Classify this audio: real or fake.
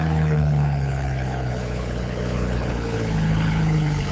fake